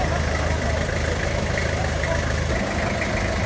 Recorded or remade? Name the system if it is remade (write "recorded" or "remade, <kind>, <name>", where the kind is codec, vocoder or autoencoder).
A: recorded